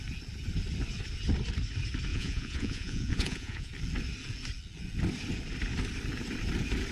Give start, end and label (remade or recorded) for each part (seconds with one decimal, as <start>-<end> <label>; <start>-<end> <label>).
0.0-2.1 recorded; 2.1-3.7 remade; 3.7-6.9 recorded